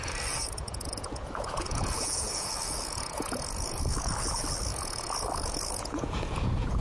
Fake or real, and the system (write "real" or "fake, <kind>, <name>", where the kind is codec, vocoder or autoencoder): fake, vocoder, Vocos